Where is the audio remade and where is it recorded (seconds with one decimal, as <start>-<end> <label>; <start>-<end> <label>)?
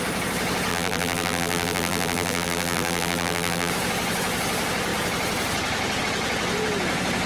0.0-0.7 recorded; 0.7-3.7 remade; 3.7-7.3 recorded